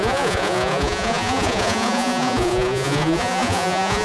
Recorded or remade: remade